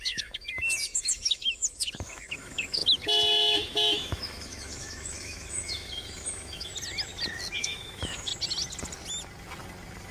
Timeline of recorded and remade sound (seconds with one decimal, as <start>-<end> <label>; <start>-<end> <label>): 0.0-6.7 remade; 6.7-7.6 recorded; 7.6-8.3 remade; 8.3-10.1 recorded